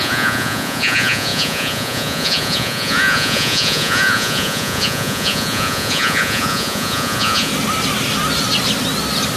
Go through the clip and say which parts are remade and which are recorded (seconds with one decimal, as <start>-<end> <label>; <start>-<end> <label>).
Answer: 0.0-7.5 remade; 7.5-9.4 recorded